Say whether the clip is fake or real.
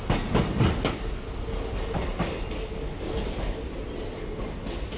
real